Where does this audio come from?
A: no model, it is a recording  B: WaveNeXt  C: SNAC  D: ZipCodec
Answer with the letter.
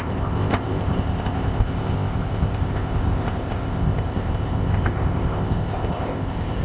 D